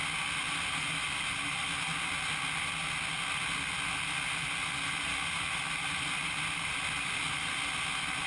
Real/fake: real